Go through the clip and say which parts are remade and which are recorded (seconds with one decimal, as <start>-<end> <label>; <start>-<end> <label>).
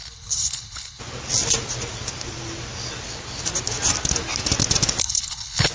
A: 0.0-1.0 remade; 1.0-5.0 recorded; 5.0-5.7 remade